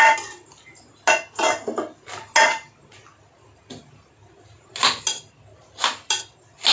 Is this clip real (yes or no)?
yes